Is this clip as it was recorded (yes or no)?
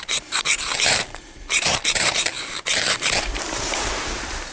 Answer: no